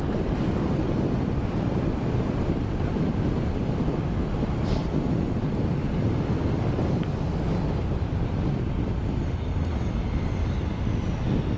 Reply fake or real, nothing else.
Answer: real